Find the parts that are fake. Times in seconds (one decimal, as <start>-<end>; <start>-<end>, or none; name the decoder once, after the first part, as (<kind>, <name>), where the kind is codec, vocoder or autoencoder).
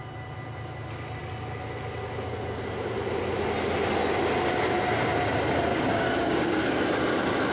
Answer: 5.7-6.7 (codec, DAC)